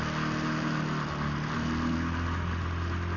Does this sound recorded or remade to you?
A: recorded